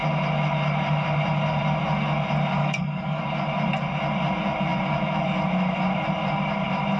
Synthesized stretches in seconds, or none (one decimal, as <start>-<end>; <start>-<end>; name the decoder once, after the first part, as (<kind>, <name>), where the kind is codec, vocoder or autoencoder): 2.6-3.2 (codec, DAC)